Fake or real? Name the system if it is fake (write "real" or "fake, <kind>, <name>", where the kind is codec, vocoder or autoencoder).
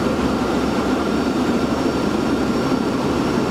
fake, vocoder, BigVGAN v2